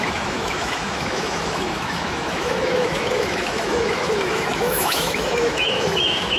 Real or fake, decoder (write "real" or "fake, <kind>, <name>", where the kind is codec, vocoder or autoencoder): fake, autoencoder, DAC-VAE